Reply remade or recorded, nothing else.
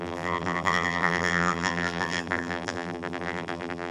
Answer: remade